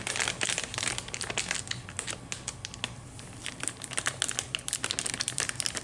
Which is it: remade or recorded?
recorded